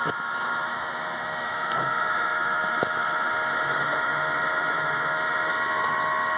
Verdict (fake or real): fake